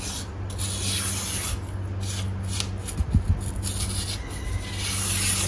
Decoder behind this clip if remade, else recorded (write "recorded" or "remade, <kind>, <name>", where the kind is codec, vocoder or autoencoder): recorded